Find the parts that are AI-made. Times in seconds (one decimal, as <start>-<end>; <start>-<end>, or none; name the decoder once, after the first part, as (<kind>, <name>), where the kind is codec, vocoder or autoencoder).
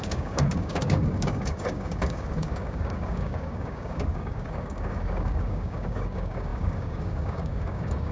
0.0-8.1 (codec, DAC)